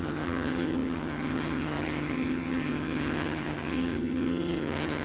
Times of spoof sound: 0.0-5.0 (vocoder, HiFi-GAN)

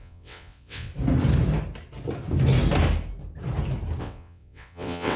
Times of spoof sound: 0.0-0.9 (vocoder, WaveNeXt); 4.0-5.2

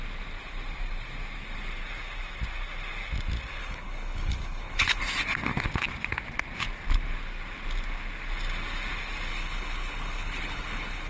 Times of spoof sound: 3.6-5.0 (codec, HILCodec); 9.3-11.1

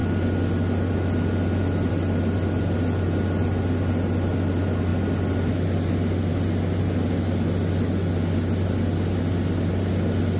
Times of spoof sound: none

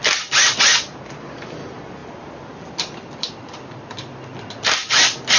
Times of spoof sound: 2.0-4.4 (vocoder, BigVGAN v2)

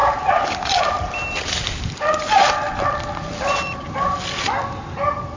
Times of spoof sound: none

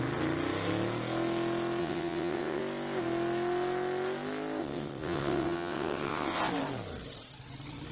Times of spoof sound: 1.8-2.6 (vocoder, WaveNeXt); 4.6-6.4

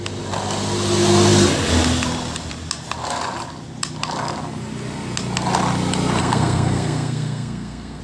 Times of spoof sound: 6.2-8.0 (codec, SNAC)